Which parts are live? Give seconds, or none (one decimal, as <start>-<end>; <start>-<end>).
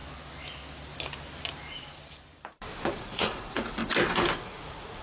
0.0-3.0; 3.8-4.4